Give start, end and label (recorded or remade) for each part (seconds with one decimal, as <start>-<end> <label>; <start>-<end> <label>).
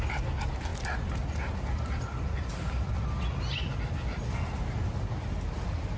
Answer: 0.0-6.0 recorded